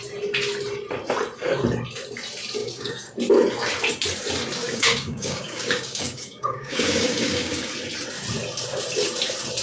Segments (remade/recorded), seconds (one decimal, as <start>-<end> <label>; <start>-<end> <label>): 0.0-2.6 recorded; 2.6-3.1 remade; 3.1-4.6 recorded; 4.6-7.7 remade; 7.7-9.6 recorded